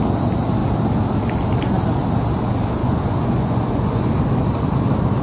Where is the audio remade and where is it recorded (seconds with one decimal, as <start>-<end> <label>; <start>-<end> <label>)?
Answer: 0.0-2.8 recorded; 2.8-4.1 remade; 4.1-5.2 recorded